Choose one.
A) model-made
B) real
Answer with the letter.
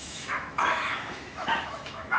A